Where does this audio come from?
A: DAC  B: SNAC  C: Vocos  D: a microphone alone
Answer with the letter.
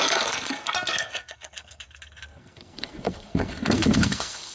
B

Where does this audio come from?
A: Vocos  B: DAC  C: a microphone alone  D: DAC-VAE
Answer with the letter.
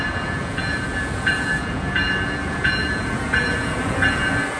A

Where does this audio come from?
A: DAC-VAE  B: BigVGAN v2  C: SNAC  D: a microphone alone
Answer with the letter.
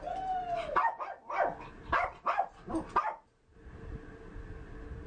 D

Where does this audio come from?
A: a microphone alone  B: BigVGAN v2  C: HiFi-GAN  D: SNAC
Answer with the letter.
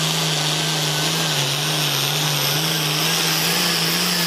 A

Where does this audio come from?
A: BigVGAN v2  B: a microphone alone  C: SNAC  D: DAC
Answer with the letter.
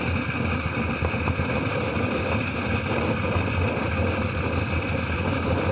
B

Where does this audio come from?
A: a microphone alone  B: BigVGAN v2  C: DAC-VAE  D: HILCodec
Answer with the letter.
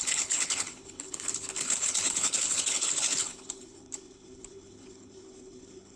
D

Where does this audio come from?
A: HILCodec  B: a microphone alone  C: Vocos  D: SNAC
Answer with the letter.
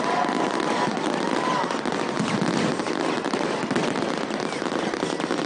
B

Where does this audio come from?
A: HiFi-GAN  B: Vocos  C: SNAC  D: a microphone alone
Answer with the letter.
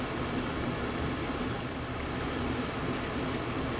D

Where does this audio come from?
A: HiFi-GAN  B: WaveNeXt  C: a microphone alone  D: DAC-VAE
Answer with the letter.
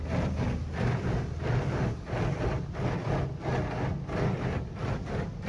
C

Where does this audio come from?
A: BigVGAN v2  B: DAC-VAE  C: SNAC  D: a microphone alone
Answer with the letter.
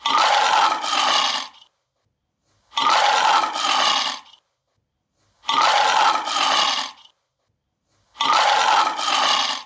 D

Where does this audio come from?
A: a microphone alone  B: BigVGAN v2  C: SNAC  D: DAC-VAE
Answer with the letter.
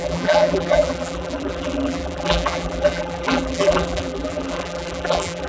B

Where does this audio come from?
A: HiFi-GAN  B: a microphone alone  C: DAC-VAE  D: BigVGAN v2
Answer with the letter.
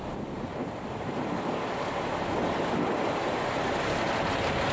B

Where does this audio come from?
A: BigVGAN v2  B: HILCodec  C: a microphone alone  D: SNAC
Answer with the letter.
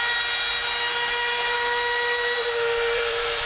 A